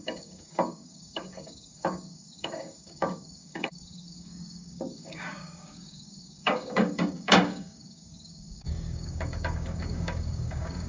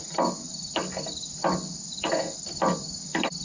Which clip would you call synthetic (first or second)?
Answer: first